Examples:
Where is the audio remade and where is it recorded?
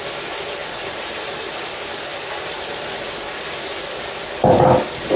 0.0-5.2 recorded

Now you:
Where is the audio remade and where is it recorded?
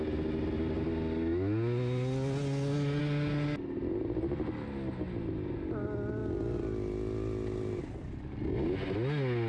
0.0-9.5 recorded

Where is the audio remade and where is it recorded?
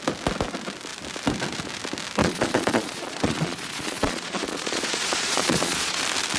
0.0-2.2 recorded; 2.2-6.0 remade; 6.0-6.4 recorded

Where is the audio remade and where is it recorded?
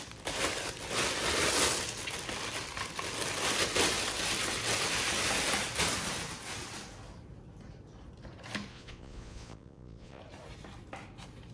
0.0-8.7 recorded; 8.7-10.2 remade; 10.2-11.5 recorded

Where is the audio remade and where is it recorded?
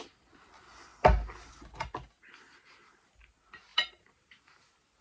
0.0-5.0 recorded